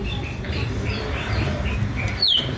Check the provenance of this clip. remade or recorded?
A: remade